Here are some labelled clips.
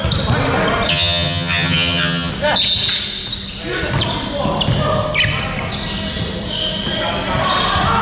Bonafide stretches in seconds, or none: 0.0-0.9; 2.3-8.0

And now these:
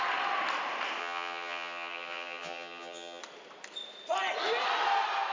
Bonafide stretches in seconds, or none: 0.0-1.0; 3.2-5.3